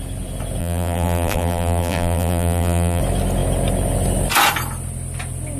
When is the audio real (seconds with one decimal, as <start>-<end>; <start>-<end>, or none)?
0.0-0.6; 3.0-5.6